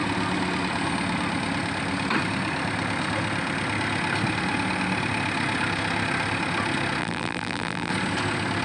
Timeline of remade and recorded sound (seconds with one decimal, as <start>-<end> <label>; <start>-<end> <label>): 0.0-7.0 recorded; 7.0-7.9 remade; 7.9-8.6 recorded

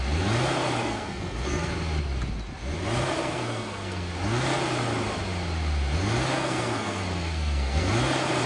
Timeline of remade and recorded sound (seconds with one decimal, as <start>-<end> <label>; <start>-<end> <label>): 0.0-0.8 recorded; 0.8-1.7 remade; 1.7-3.2 recorded; 3.2-4.1 remade; 4.1-6.3 recorded; 6.3-7.9 remade; 7.9-8.5 recorded

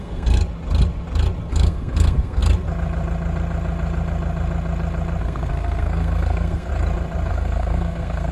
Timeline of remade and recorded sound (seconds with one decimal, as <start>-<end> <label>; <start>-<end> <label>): 0.0-0.4 remade; 0.4-1.5 recorded; 1.5-2.4 remade; 2.4-5.2 recorded; 5.2-6.7 remade; 6.7-7.3 recorded; 7.3-8.3 remade

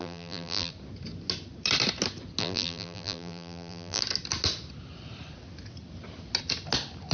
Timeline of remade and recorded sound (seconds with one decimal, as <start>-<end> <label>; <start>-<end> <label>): 0.0-0.7 remade; 0.7-2.4 recorded; 2.4-4.0 remade; 4.0-7.1 recorded

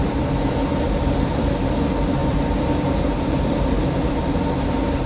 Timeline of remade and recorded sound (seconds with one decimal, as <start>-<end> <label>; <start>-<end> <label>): 0.0-2.2 recorded; 2.2-4.2 remade; 4.2-5.1 recorded

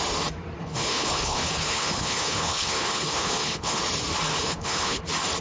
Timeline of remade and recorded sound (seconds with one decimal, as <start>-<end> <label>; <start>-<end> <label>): 0.0-0.6 recorded; 0.6-3.8 remade; 3.8-4.3 recorded; 4.3-5.0 remade; 5.0-5.4 recorded